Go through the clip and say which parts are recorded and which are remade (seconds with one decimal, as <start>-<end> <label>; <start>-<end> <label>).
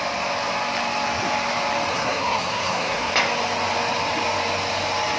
0.0-1.9 recorded; 1.9-3.1 remade; 3.1-5.2 recorded